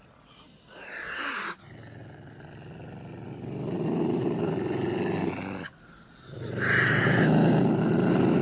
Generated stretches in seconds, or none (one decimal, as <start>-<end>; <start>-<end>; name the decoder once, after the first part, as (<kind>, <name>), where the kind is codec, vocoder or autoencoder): none